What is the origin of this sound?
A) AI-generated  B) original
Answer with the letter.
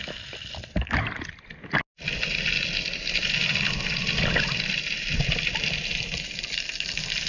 B